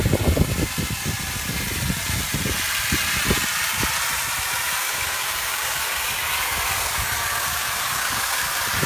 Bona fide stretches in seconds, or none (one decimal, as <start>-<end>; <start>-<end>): 0.0-4.8; 8.4-8.9